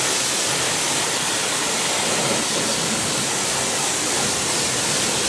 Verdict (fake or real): real